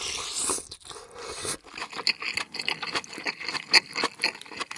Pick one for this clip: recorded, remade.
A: recorded